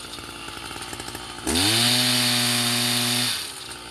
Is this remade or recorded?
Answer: recorded